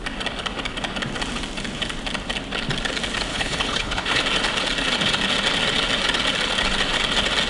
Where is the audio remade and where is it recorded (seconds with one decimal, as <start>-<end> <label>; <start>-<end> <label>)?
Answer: 0.0-3.3 recorded; 3.3-4.2 remade; 4.2-7.5 recorded